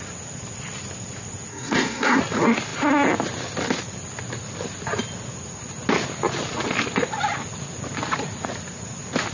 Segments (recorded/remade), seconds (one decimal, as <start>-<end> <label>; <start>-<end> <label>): 0.0-1.5 recorded; 1.5-2.2 remade; 2.2-9.3 recorded